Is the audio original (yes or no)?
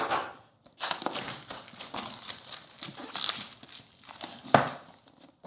no